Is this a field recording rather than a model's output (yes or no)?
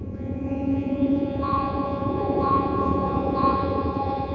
no